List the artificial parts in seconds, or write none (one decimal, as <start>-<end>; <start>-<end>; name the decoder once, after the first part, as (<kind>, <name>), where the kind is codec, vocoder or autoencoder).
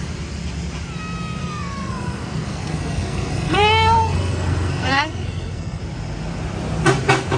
1.4-5.8 (codec, SNAC)